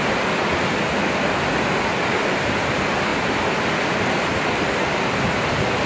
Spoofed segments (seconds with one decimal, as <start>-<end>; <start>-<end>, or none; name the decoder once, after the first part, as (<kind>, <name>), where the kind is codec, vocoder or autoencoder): none